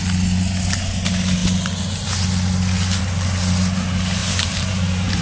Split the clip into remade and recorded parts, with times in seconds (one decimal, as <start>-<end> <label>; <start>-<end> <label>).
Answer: 0.0-4.2 recorded; 4.2-5.2 remade